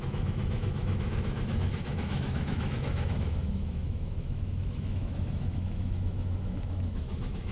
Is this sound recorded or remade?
remade